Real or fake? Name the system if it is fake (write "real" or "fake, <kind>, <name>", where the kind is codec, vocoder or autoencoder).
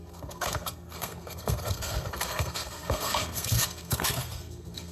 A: fake, codec, SNAC